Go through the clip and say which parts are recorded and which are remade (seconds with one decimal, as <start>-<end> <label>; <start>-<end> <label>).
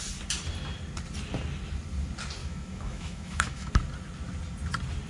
0.0-2.4 recorded; 2.4-3.7 remade; 3.7-5.1 recorded